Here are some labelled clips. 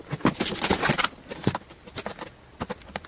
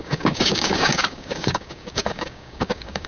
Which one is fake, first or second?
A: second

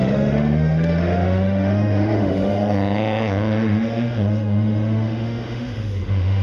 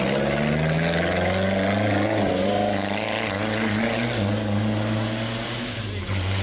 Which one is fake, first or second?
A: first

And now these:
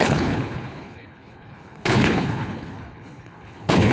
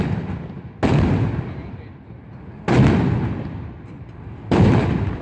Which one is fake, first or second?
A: first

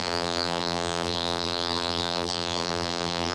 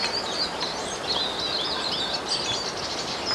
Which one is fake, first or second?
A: first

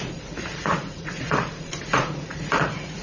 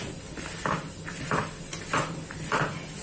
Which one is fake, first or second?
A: first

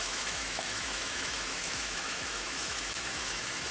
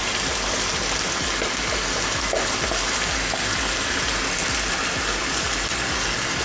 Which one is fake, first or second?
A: first